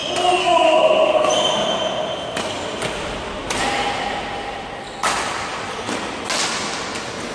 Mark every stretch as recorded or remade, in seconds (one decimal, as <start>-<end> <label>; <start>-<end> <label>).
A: 0.0-0.4 recorded; 0.4-1.3 remade; 1.3-7.3 recorded